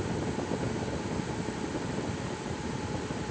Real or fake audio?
real